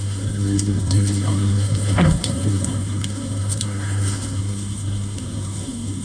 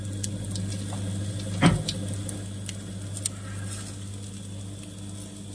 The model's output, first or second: first